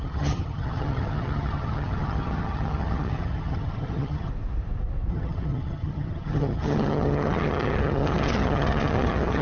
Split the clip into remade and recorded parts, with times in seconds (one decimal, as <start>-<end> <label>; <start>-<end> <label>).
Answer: 0.0-4.3 remade; 4.3-5.1 recorded; 5.1-9.4 remade